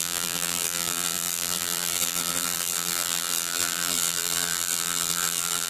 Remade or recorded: remade